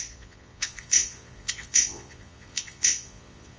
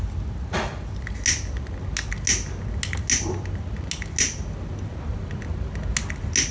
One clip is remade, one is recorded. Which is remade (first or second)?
first